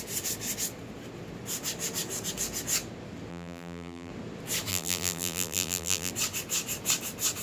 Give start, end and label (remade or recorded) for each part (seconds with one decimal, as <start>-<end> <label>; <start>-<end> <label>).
0.0-3.3 recorded; 3.3-4.1 remade; 4.1-4.7 recorded; 4.7-6.1 remade; 6.1-7.4 recorded